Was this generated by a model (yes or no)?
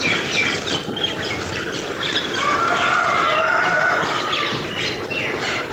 no